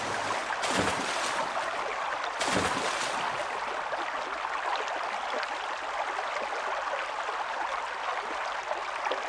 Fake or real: real